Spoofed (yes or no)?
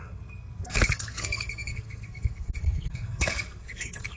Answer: yes